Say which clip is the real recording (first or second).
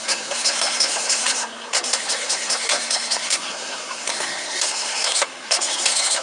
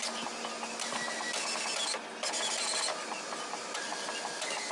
second